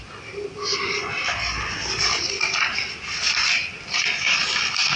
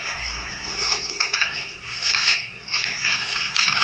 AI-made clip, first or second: second